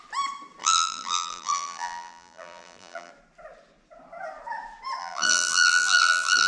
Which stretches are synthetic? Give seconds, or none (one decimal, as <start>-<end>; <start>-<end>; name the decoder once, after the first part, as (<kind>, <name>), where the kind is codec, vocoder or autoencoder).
0.6-3.1 (vocoder, BigVGAN v2); 5.0-6.5